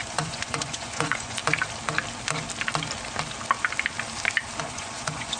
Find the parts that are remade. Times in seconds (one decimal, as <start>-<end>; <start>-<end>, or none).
0.0-1.4; 4.6-5.4